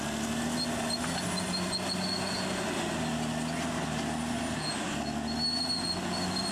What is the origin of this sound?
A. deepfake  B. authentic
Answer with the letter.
B